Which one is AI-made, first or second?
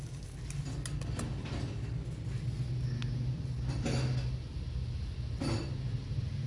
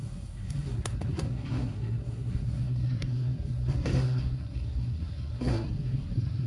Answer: second